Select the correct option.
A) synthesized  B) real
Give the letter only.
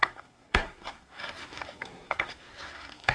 A